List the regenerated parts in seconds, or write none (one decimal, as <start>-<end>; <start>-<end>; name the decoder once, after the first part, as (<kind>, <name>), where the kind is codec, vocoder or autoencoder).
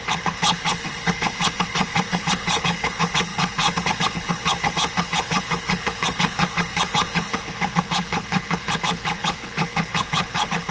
0.0-10.7 (codec, HILCodec)